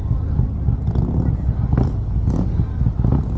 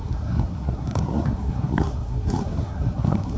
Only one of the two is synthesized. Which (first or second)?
second